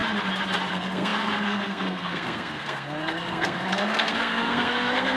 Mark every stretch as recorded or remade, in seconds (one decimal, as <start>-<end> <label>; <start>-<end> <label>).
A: 0.0-0.7 recorded; 0.7-5.2 remade

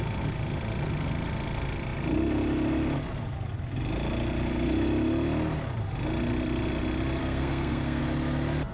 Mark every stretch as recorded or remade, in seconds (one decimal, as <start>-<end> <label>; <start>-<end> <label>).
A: 0.0-7.2 recorded; 7.2-8.0 remade; 8.0-8.7 recorded

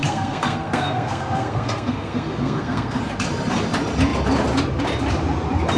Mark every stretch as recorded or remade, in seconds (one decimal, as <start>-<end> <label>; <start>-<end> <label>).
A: 0.0-3.0 remade; 3.0-5.8 recorded